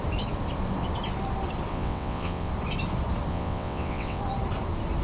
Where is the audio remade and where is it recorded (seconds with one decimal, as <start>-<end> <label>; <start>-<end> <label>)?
0.0-1.7 recorded; 1.7-2.5 remade; 2.5-3.3 recorded; 3.3-4.2 remade; 4.2-5.0 recorded